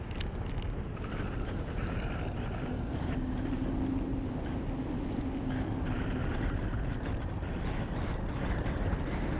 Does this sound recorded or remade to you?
recorded